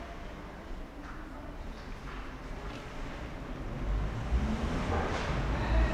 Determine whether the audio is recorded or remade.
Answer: recorded